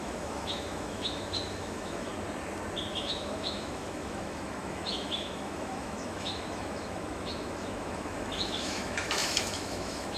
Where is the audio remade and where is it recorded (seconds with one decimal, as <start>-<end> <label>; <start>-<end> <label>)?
0.0-2.1 remade; 2.1-2.9 recorded; 2.9-10.2 remade